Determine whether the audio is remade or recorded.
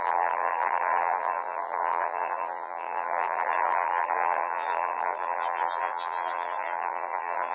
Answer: remade